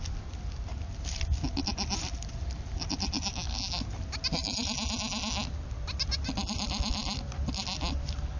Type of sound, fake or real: real